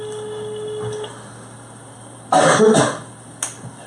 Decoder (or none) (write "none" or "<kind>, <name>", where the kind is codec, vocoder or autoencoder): none